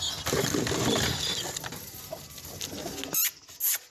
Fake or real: real